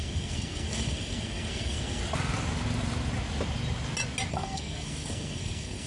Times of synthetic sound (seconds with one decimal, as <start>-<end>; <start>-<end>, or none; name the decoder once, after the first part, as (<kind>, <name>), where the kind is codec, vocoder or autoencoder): 0.0-2.0 (codec, SNAC); 4.3-5.9